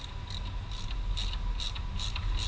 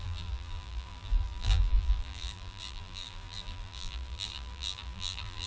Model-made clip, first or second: second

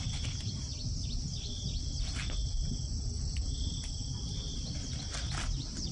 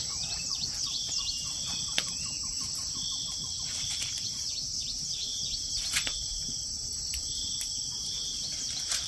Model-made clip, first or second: second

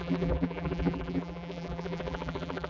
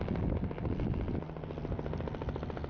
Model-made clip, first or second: first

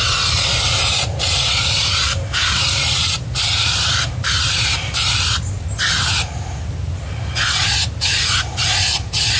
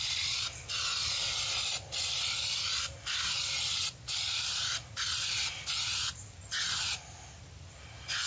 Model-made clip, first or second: first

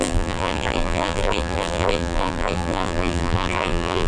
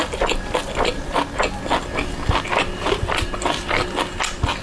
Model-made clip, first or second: first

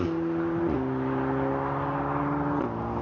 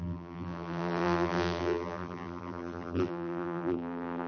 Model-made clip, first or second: second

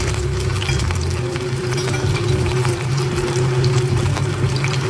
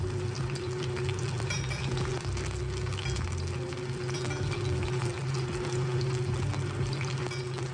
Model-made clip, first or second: first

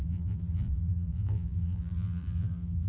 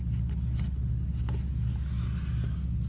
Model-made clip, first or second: first